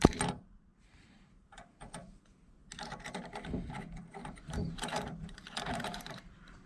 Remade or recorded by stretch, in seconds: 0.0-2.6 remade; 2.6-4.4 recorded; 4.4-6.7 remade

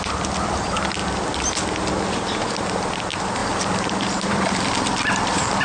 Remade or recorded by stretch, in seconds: 0.0-1.0 remade; 1.0-2.7 recorded; 2.7-5.6 remade